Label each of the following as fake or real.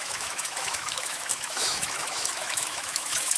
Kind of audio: fake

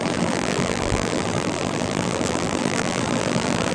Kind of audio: fake